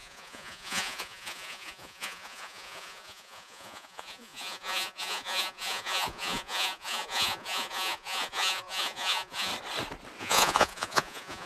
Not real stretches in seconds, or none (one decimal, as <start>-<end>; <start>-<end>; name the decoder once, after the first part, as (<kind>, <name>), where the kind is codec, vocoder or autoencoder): 0.0-9.5 (vocoder, Vocos); 10.2-11.5